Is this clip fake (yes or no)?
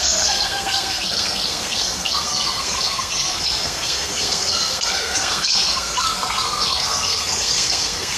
yes